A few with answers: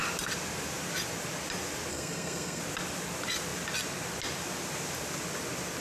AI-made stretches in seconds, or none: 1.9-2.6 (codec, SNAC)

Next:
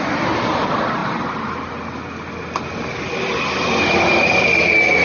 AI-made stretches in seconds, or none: none